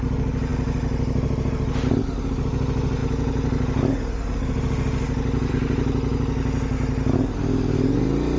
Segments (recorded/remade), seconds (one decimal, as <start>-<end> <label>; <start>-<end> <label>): 0.0-8.4 recorded